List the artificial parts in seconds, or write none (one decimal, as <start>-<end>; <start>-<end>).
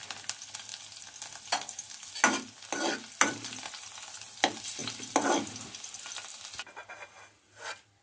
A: none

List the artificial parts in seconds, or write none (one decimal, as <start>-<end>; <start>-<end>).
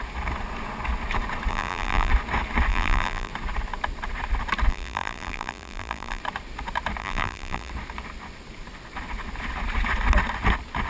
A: 1.5-2.1; 2.7-3.3; 4.7-6.2; 7.0-7.7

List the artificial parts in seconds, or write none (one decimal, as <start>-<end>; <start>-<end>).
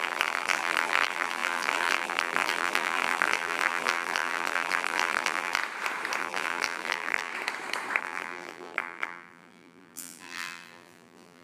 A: 0.0-5.6; 6.2-7.3; 8.0-11.4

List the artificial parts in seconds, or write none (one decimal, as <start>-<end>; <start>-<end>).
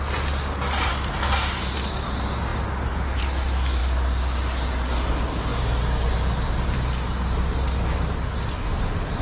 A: none